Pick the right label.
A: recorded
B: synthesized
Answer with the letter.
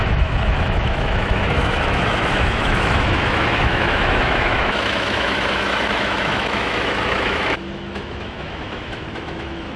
B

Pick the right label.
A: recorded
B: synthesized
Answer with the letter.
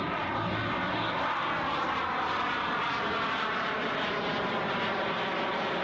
A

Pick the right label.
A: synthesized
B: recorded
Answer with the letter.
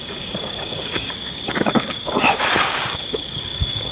A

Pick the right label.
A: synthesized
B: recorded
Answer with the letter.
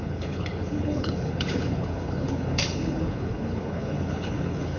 A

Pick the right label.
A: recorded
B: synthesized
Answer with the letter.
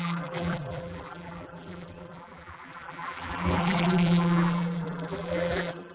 B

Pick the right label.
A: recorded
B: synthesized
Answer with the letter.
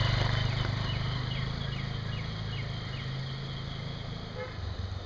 A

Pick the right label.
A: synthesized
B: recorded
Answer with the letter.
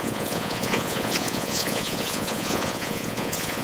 A